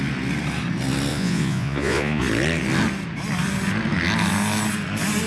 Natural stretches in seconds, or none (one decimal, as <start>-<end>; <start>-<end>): 0.0-1.1; 2.2-5.3